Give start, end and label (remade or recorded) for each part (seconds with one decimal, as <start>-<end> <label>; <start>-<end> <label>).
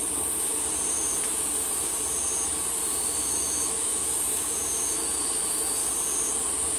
0.0-0.9 recorded; 0.9-1.9 remade; 1.9-2.9 recorded; 2.9-5.8 remade; 5.8-6.8 recorded